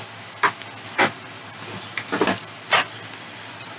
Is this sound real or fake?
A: real